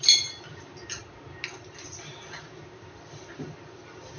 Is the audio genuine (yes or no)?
yes